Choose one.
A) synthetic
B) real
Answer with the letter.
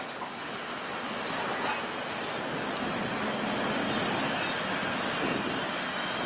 B